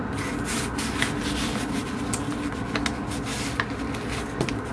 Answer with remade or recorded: recorded